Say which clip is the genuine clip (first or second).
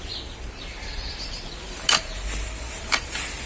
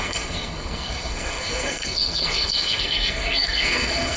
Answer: first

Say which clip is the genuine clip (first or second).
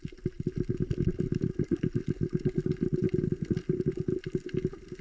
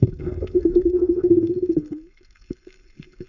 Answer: first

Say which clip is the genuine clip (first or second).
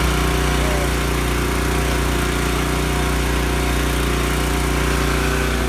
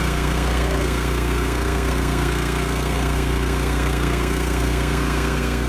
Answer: first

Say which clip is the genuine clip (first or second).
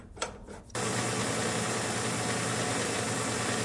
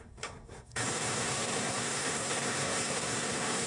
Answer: first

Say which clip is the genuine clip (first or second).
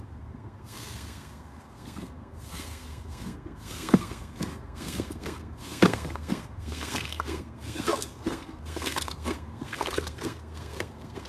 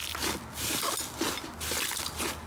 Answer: second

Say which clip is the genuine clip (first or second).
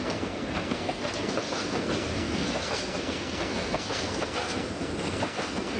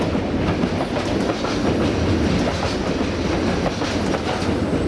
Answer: second